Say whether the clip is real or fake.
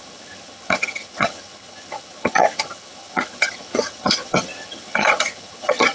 fake